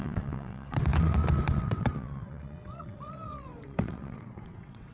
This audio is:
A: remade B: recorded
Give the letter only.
A